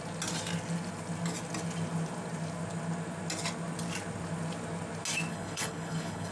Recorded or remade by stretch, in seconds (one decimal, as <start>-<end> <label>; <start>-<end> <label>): 0.0-5.3 recorded; 5.3-6.3 remade